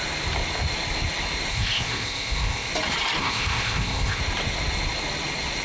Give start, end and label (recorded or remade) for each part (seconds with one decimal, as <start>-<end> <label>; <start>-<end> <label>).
0.0-1.5 recorded; 1.5-2.7 remade; 2.7-3.2 recorded; 3.2-4.2 remade; 4.2-5.6 recorded